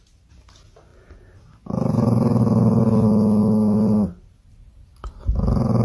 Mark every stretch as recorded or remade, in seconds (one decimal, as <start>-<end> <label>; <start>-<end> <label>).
0.0-5.8 recorded